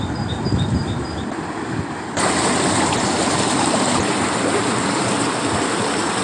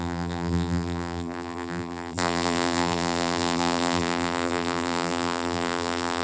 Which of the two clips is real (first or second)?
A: first